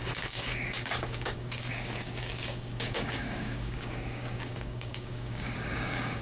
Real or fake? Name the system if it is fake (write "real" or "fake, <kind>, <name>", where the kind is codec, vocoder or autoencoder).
fake, codec, DAC